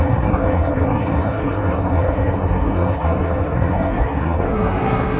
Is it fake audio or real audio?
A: fake